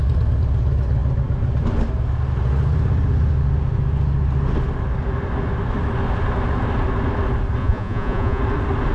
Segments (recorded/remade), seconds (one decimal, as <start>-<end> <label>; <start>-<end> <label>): 0.0-7.6 recorded; 7.6-8.4 remade; 8.4-8.9 recorded